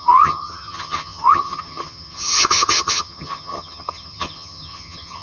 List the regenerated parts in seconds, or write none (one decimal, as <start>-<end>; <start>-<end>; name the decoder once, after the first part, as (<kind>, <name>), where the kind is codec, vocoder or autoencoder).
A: 0.0-5.2 (vocoder, HiFi-GAN)